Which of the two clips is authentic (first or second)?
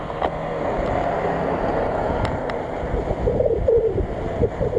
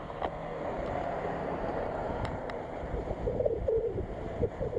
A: first